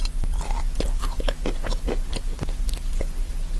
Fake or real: real